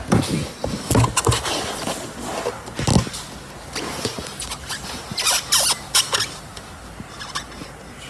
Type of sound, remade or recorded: recorded